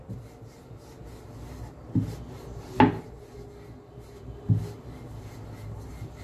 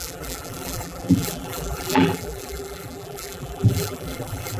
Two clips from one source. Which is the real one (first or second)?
first